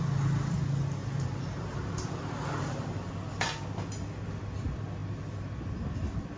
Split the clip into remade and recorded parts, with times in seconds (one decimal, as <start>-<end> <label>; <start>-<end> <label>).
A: 0.0-1.0 recorded; 1.0-3.1 remade; 3.1-6.4 recorded